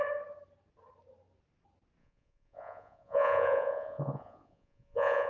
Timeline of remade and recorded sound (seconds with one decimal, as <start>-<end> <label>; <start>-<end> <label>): 0.0-2.0 recorded; 2.0-5.3 remade